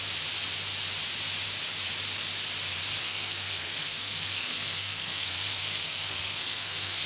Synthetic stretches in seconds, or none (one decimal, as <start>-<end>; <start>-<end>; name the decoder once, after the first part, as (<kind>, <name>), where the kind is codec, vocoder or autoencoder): 3.0-7.1 (codec, SNAC)